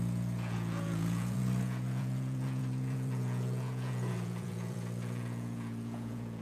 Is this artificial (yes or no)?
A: yes